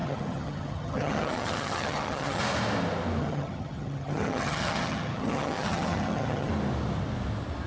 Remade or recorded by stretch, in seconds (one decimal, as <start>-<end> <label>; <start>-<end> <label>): 0.0-2.4 remade; 2.4-3.2 recorded; 3.2-6.5 remade; 6.5-7.7 recorded